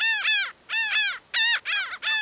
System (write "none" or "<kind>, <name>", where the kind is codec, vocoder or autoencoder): none